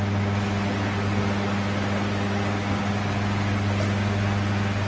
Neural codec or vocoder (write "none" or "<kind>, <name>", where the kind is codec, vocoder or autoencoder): none